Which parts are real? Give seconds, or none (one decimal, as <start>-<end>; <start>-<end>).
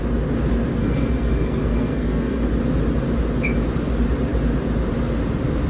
0.0-0.8; 2.4-5.7